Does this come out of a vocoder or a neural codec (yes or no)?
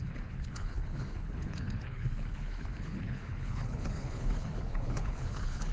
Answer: yes